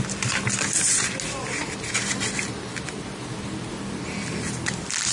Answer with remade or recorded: recorded